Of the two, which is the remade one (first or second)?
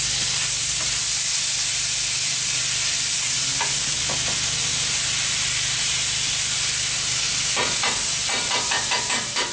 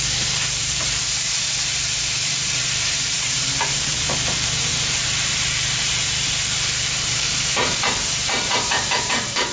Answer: second